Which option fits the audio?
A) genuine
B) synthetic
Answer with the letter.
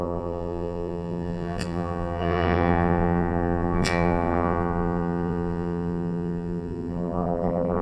B